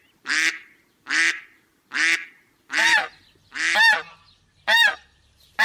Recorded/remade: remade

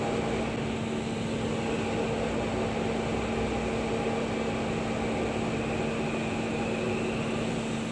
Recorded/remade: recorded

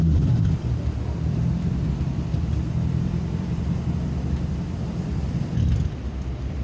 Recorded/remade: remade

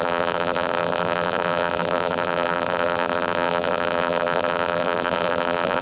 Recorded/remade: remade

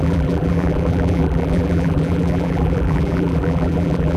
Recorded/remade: remade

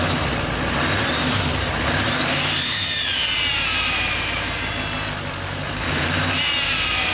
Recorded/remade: recorded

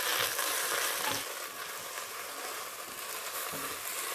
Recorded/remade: remade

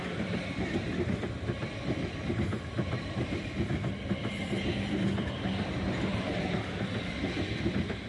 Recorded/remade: remade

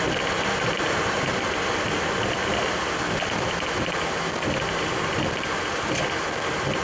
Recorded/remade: recorded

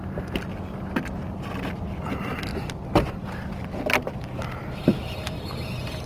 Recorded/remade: recorded